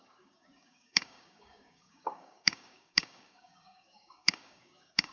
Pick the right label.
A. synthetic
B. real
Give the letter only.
A